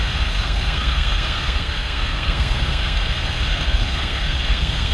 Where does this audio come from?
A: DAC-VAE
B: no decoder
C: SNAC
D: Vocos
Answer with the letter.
C